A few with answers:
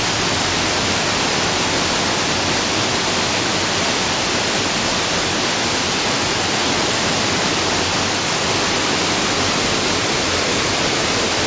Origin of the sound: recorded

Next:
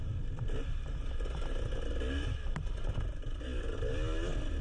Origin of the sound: recorded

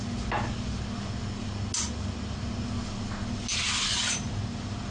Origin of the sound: recorded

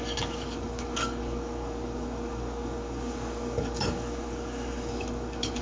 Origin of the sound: remade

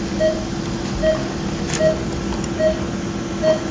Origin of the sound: recorded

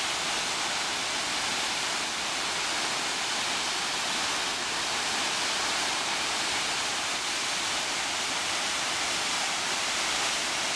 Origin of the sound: recorded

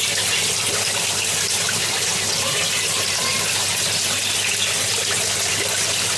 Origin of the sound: recorded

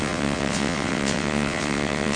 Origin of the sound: remade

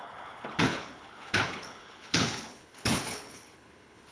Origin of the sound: remade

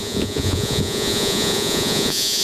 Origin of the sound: remade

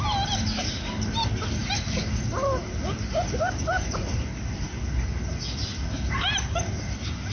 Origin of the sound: recorded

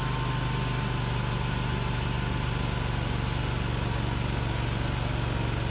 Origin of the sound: recorded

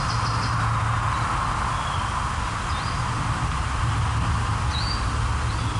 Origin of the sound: recorded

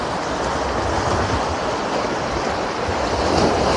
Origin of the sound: recorded